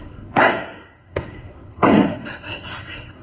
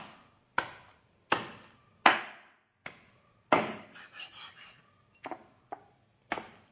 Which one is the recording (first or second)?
second